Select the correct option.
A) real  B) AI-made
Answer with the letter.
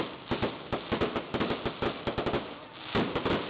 A